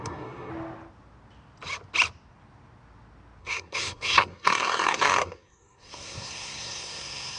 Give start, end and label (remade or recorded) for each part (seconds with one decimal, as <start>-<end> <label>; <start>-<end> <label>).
0.0-0.5 remade; 0.5-3.4 recorded; 3.4-7.4 remade